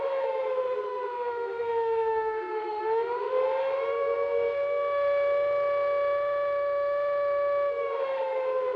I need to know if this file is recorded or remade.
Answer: remade